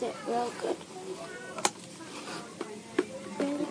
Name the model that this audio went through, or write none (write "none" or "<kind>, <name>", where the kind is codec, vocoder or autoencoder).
none